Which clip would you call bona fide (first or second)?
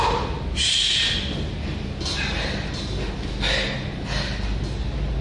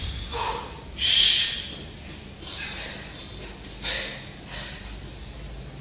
first